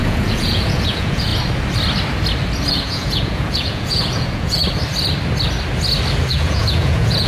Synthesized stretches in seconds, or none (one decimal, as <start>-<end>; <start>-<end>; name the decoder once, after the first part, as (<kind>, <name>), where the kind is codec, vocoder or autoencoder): 0.0-1.3 (vocoder, Vocos); 2.7-4.6; 6.3-7.3